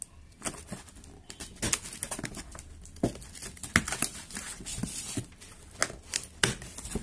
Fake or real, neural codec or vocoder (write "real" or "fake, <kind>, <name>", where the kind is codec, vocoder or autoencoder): real